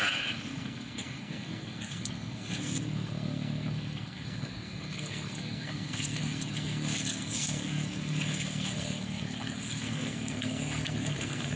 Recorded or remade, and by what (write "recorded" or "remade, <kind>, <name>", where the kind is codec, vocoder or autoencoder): remade, codec, SNAC